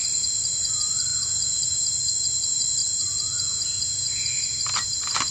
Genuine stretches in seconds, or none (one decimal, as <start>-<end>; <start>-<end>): 0.7-5.3